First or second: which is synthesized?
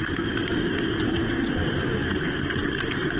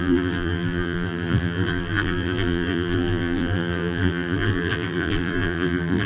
second